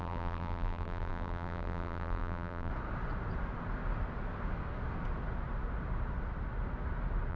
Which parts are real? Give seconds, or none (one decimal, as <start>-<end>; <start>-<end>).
2.7-7.3